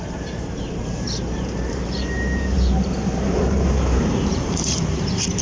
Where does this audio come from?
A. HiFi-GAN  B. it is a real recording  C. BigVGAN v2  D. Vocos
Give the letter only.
C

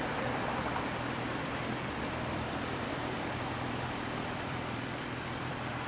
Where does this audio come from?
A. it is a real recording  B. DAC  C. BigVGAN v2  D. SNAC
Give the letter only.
C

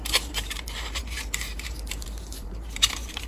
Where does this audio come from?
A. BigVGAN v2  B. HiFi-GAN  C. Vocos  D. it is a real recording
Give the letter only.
A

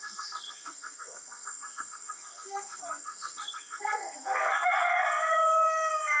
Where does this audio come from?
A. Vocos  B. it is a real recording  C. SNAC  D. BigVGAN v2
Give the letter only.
C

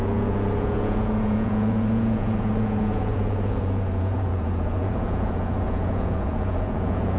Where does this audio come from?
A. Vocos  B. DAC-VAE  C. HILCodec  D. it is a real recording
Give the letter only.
A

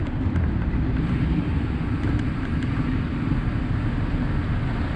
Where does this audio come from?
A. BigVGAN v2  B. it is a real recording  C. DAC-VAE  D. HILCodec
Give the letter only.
B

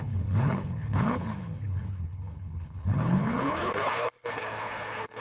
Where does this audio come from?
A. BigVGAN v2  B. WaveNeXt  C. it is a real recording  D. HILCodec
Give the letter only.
D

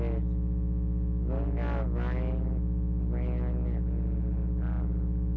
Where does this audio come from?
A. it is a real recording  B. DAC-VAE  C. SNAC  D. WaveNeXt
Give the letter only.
A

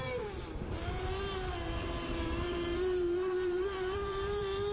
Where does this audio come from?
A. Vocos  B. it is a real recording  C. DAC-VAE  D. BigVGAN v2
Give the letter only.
D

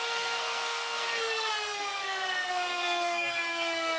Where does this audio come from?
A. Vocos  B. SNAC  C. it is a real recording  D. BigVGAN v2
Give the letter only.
B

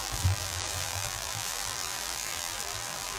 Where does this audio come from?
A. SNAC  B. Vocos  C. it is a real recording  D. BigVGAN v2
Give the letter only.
D